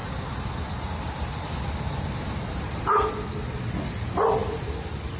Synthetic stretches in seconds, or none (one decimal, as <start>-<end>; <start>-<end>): none